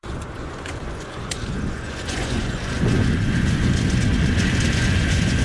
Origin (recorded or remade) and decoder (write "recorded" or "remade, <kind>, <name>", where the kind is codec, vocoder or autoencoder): remade, vocoder, Vocos